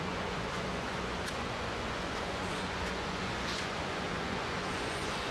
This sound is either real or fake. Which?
fake